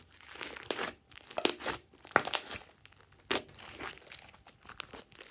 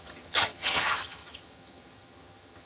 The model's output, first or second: second